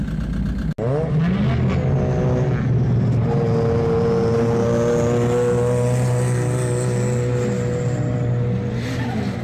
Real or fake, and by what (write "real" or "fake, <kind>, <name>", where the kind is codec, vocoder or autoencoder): real